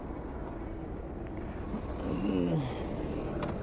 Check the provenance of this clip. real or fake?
real